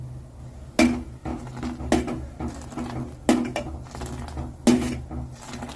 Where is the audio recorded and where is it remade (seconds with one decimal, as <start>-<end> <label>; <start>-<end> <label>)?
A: 0.0-5.8 recorded